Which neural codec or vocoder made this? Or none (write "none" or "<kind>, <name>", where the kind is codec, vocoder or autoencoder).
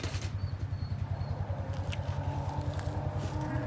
none